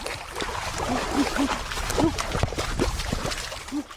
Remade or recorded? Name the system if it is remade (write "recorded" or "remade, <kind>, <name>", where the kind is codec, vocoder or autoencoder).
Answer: recorded